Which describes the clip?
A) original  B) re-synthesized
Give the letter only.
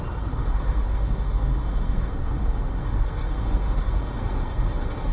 B